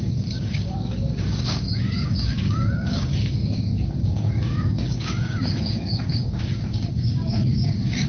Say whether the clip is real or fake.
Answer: fake